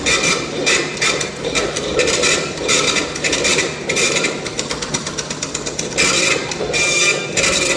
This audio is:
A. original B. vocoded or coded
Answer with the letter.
B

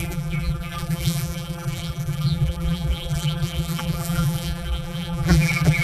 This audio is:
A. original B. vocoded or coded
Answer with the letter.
B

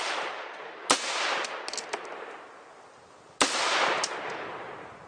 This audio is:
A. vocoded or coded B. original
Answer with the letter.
B